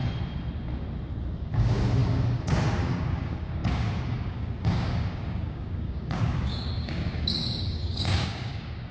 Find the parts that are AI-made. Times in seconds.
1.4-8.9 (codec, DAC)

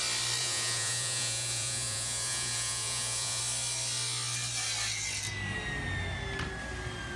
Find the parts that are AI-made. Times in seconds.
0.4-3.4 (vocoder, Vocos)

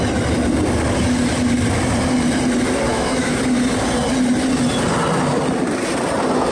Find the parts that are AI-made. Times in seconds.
2.9-3.4 (autoencoder, DAC-VAE)

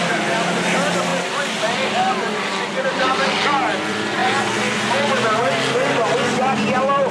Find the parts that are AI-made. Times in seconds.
none

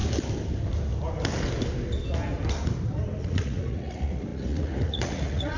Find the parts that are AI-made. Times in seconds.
3.2-5.6 (vocoder, Vocos)

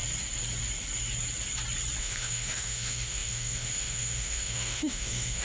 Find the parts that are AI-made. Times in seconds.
2.0-5.4 (autoencoder, DAC-VAE)

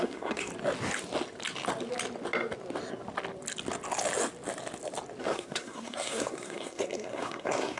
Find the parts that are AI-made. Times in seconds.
0.0-0.5 (codec, SNAC); 5.2-7.8